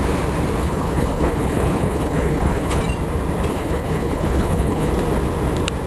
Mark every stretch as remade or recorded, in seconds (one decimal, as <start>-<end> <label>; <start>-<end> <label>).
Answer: 0.0-0.6 recorded; 0.6-2.8 remade; 2.8-3.5 recorded; 3.5-4.9 remade; 4.9-5.9 recorded